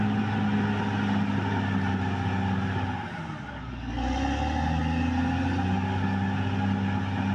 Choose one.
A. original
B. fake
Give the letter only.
A